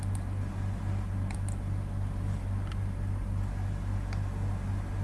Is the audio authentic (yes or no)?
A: yes